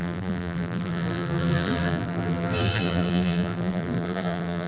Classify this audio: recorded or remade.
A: remade